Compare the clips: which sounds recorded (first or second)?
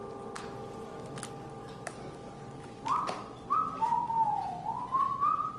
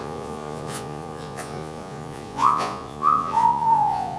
first